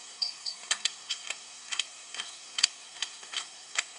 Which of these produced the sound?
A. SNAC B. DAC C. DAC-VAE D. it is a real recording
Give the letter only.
A